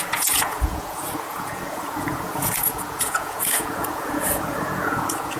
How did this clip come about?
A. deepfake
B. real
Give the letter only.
A